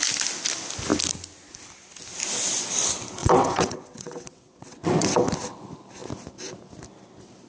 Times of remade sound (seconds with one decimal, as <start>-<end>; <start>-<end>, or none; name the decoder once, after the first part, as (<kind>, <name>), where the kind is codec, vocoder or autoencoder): 3.2-5.3 (vocoder, WaveNeXt)